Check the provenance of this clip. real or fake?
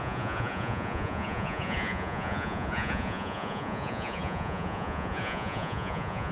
fake